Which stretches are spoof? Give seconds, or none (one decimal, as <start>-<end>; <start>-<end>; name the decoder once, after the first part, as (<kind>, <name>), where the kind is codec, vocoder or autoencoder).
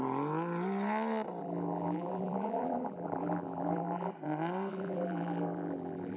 1.4-4.1 (vocoder, BigVGAN v2); 4.7-6.2